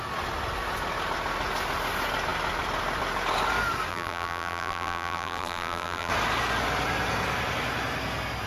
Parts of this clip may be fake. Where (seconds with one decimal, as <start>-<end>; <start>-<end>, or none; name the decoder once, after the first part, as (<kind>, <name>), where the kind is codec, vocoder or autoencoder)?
3.9-6.1 (vocoder, BigVGAN v2)